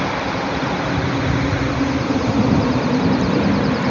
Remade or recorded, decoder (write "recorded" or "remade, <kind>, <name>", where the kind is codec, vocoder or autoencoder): remade, vocoder, BigVGAN v2